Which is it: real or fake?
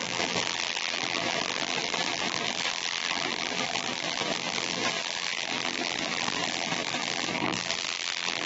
fake